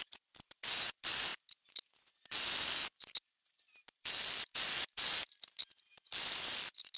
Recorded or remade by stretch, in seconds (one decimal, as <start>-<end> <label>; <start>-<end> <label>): 0.0-7.0 recorded